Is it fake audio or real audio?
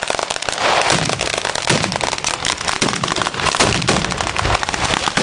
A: real